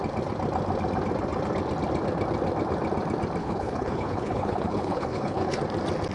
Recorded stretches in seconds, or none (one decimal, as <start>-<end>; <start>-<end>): 0.0-3.4; 5.6-6.1